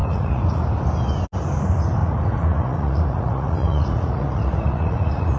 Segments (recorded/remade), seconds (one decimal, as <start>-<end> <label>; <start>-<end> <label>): 0.0-0.6 remade; 0.6-2.0 recorded; 2.0-5.4 remade